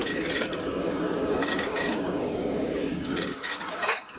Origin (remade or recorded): remade